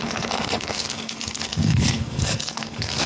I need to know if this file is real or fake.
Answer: fake